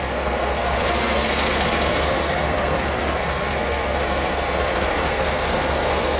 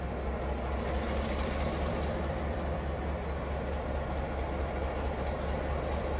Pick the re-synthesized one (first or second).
first